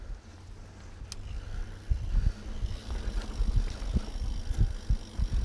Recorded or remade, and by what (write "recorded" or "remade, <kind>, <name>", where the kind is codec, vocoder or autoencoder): recorded